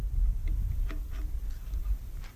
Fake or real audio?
real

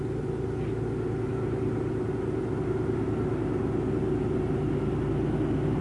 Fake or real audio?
real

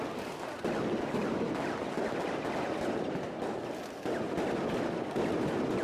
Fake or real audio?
real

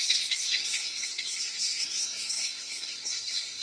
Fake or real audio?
fake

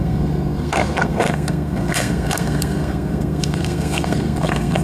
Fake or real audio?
fake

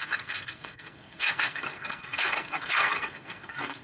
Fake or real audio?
fake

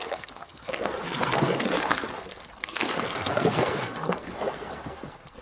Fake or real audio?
fake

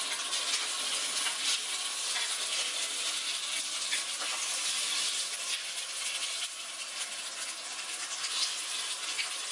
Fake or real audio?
real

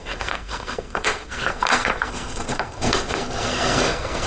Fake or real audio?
fake